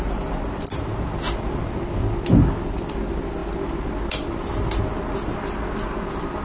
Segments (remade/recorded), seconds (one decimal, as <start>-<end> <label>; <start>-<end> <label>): 0.0-6.4 recorded